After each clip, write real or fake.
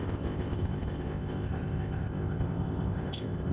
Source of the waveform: fake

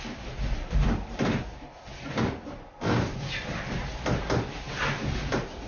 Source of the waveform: real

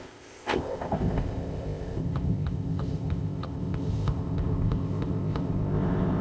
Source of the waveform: fake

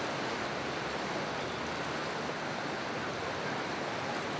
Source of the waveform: real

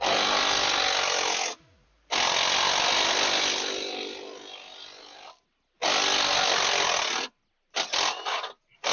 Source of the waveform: real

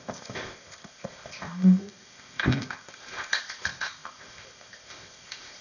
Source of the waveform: fake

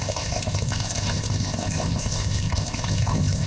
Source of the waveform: fake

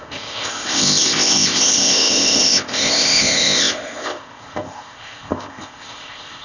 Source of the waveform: fake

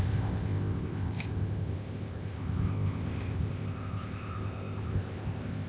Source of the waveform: fake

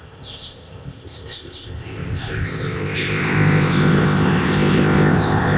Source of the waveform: fake